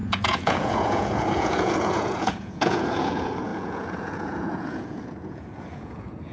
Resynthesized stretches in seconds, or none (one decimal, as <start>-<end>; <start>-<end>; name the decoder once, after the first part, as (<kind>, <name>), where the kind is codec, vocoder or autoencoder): 0.0-6.3 (vocoder, Vocos)